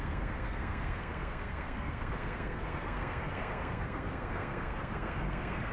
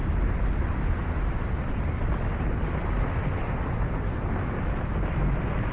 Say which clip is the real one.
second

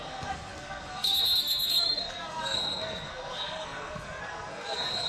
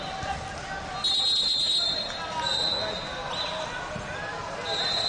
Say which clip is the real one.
second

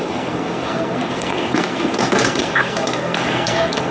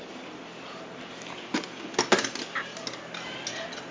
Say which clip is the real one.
second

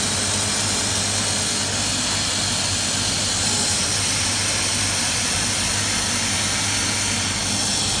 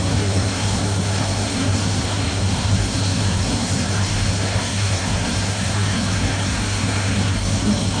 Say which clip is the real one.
first